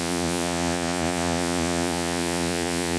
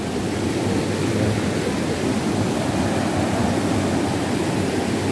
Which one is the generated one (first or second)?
first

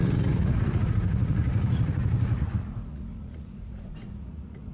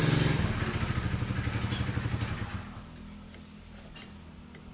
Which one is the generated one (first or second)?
first